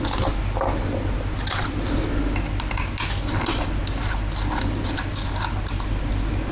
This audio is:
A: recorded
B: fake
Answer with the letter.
A